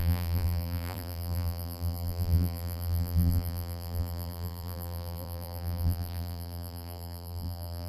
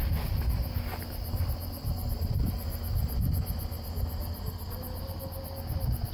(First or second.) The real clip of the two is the second